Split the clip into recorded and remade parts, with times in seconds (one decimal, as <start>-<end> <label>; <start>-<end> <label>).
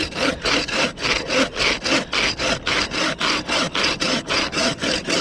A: 0.0-0.9 remade; 0.9-4.0 recorded; 4.0-5.2 remade